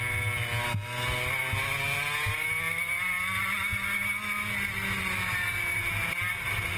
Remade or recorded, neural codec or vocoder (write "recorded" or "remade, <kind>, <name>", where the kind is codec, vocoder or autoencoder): recorded